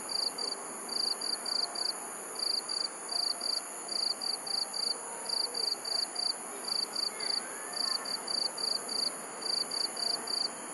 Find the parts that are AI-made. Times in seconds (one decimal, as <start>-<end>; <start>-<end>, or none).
none